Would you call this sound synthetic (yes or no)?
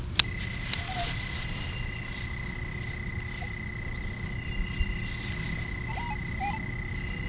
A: no